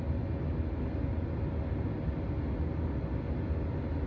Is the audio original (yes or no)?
yes